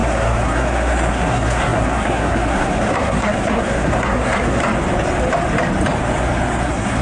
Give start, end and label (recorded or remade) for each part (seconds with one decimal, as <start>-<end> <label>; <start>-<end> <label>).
0.0-4.6 remade; 4.6-6.6 recorded; 6.6-7.0 remade